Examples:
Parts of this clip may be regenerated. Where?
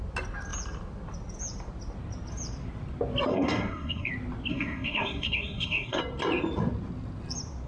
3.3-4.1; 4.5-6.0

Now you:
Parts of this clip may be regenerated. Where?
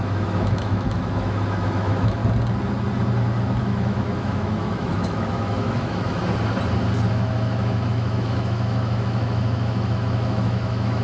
0.0-2.2; 3.6-6.2; 7.1-11.0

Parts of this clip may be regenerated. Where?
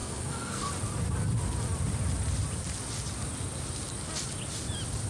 0.0-0.7